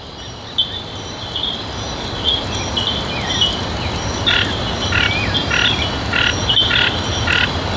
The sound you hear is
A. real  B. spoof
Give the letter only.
A